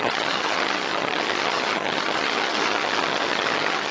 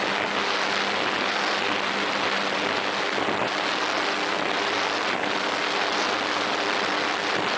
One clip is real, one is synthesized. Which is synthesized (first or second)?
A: first